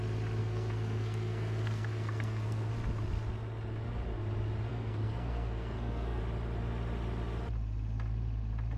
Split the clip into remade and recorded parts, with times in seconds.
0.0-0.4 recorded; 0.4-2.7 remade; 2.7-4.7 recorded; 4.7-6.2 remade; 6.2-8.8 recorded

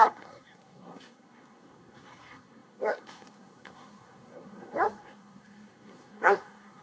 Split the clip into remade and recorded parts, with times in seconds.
0.0-6.8 remade